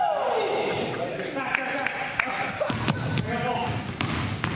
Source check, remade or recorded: recorded